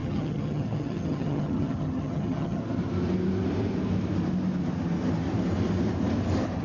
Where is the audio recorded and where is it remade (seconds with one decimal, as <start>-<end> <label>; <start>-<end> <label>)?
0.0-2.6 remade; 2.6-6.6 recorded